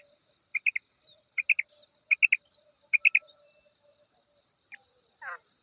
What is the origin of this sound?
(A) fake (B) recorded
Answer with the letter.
B